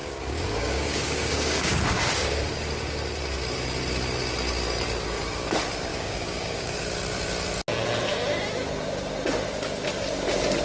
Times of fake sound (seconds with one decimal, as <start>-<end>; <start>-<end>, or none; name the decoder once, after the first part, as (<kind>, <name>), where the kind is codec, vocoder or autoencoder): 0.0-2.4 (codec, DAC); 5.9-6.8